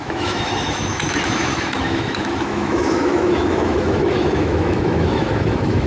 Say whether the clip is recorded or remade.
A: remade